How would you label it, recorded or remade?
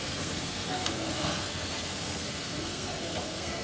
remade